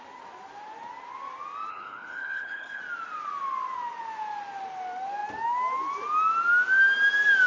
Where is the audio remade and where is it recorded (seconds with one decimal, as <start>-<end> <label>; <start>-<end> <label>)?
0.0-1.7 recorded; 1.7-2.8 remade; 2.8-7.5 recorded